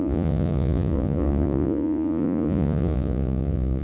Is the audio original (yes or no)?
no